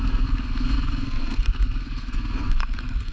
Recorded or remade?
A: remade